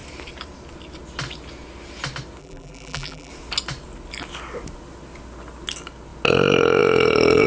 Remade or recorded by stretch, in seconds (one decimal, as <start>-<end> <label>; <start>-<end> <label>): 0.0-2.4 recorded; 2.4-3.3 remade; 3.3-7.5 recorded